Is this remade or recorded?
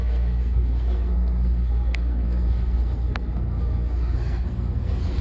remade